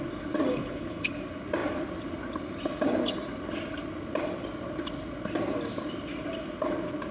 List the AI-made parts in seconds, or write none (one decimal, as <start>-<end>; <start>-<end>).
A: 0.5-1.1